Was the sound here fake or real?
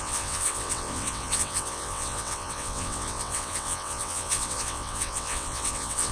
fake